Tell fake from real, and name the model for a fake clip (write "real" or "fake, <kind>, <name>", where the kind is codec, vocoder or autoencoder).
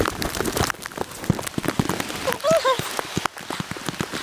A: real